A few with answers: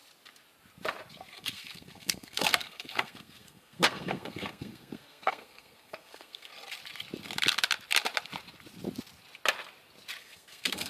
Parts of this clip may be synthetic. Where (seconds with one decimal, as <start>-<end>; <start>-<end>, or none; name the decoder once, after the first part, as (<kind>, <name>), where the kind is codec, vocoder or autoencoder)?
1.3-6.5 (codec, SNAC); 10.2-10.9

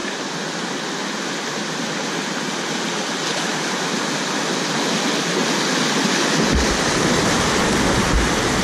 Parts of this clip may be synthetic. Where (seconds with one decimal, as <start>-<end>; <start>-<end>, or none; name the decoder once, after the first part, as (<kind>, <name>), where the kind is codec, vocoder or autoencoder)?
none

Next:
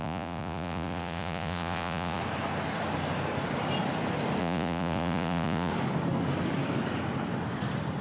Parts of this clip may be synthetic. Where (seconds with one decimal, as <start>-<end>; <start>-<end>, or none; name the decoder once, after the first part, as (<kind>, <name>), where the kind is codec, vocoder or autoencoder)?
0.0-2.2 (vocoder, Vocos); 4.4-5.7

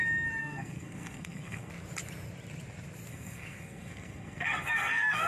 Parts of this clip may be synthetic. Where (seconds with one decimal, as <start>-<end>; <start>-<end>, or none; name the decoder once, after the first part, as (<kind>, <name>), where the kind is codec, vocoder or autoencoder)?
0.4-1.7 (codec, SNAC); 3.1-5.3

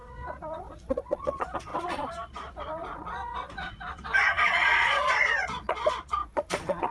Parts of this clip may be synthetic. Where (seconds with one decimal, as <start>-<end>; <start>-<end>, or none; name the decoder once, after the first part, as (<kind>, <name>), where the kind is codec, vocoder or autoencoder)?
0.0-6.9 (vocoder, Vocos)

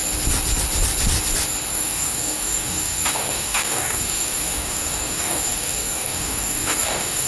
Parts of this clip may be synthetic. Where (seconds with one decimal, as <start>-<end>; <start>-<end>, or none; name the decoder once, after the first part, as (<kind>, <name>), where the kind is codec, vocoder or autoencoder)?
1.7-7.3 (codec, DAC)

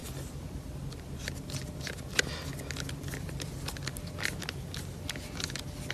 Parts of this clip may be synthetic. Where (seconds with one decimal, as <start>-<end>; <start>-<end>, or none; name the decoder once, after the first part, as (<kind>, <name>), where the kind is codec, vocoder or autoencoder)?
none

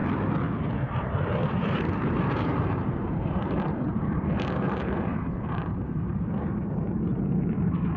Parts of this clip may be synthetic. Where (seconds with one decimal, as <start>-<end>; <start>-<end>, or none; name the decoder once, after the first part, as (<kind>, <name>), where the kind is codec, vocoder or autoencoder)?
0.9-8.0 (vocoder, BigVGAN v2)